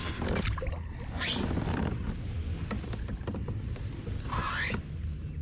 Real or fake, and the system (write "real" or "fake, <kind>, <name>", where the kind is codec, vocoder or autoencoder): real